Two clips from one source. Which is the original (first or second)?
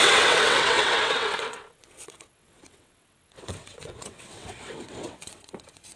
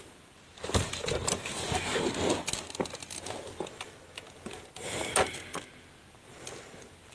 second